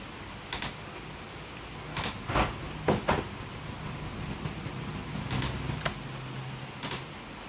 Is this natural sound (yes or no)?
yes